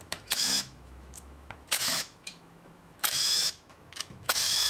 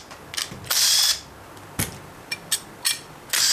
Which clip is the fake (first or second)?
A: first